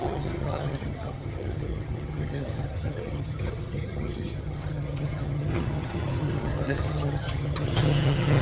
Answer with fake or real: fake